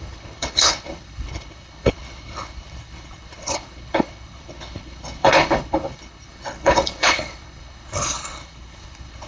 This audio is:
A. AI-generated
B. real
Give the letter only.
A